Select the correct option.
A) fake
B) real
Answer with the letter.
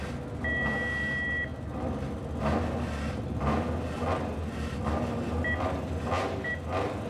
B